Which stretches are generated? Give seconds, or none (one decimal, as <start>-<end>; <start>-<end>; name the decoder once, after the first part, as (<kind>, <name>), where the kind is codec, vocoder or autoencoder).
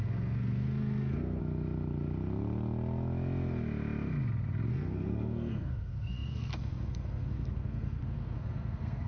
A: 0.0-1.4 (codec, SNAC); 4.7-9.1